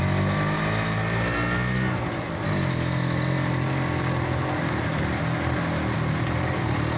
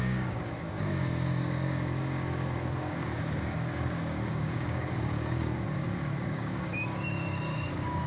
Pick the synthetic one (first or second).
second